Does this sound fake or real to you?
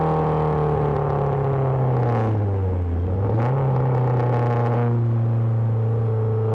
real